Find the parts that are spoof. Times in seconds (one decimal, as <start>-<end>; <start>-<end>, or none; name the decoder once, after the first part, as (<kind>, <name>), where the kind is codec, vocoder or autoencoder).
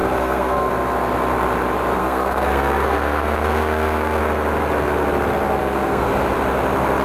0.0-0.7 (codec, SNAC); 2.0-4.2; 5.6-6.1